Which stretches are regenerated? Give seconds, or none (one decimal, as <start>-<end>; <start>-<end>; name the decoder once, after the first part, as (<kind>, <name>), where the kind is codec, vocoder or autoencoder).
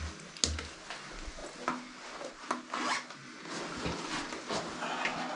none